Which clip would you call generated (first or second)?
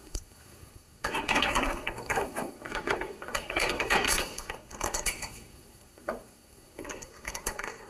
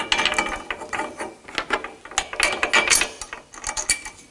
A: first